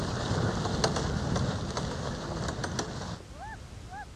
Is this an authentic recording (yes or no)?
yes